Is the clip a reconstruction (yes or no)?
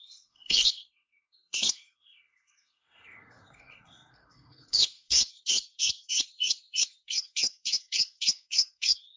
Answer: yes